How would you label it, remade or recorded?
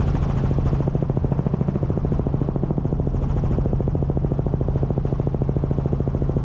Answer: recorded